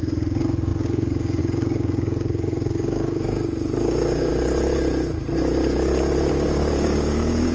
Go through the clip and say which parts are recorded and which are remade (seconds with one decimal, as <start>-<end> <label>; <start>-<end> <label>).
0.0-4.3 remade; 4.3-6.3 recorded; 6.3-7.5 remade